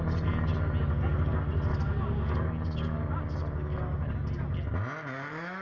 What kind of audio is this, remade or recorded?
recorded